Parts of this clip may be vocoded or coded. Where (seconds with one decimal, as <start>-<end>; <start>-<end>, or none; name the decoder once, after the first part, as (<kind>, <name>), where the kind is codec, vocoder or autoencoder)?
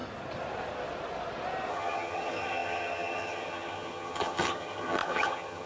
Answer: 1.7-5.7 (vocoder, HiFi-GAN)